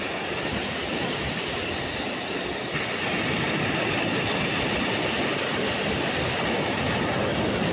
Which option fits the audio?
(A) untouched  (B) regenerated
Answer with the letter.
A